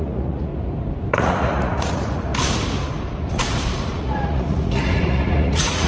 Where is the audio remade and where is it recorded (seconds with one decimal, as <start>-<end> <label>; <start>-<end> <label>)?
0.0-0.5 remade; 0.5-1.1 recorded; 1.1-2.3 remade; 2.3-3.3 recorded; 3.3-5.9 remade